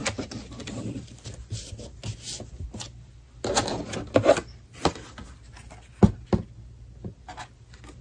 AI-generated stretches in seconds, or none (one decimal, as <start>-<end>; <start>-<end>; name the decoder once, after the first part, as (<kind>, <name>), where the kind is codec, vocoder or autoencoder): 0.6-1.6 (vocoder, BigVGAN v2)